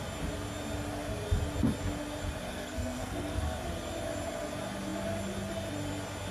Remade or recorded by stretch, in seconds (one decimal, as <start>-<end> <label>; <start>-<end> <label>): 0.0-2.5 recorded; 2.5-3.4 remade; 3.4-6.3 recorded